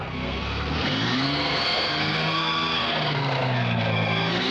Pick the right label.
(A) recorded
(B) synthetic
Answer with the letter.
B